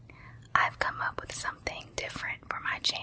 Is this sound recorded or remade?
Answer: recorded